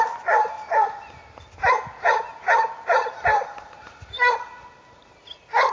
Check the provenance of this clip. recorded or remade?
recorded